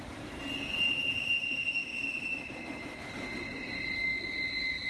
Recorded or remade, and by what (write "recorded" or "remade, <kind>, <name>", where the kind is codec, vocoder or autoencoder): recorded